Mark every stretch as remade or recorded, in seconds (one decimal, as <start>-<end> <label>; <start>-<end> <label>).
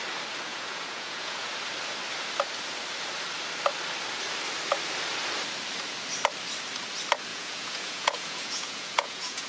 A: 0.0-0.5 recorded; 0.5-1.5 remade; 1.5-7.3 recorded; 7.3-9.5 remade